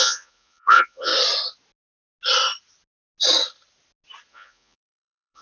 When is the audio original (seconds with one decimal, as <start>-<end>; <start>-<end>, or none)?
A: 1.1-4.3